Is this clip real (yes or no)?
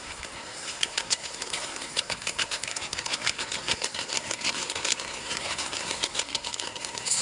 no